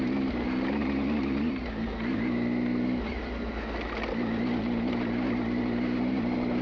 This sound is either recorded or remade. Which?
recorded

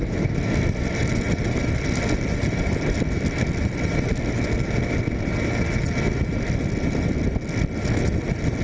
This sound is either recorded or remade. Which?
recorded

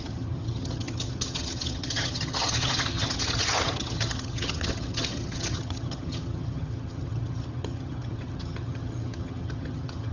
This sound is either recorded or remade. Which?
remade